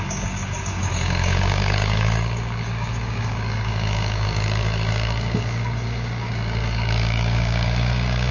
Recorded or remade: remade